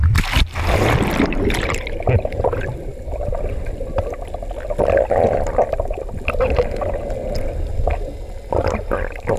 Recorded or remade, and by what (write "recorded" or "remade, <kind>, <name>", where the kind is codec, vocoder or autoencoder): recorded